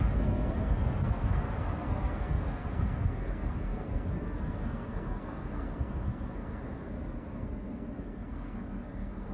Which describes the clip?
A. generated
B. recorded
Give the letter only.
A